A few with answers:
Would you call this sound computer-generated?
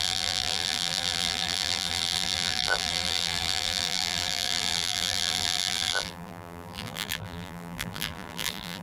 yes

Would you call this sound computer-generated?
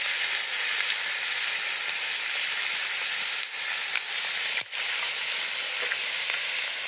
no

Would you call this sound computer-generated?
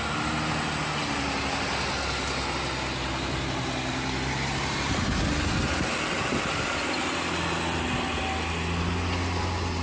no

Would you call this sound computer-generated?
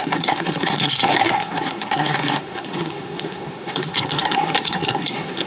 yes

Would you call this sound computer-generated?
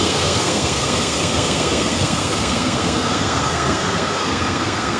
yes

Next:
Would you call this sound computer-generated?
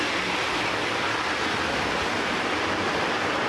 no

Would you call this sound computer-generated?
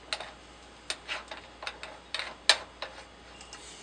no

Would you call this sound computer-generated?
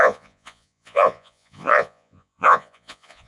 yes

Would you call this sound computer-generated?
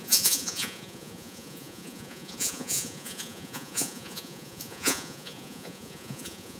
yes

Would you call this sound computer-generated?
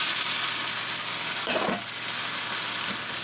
no